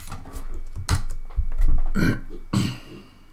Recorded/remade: recorded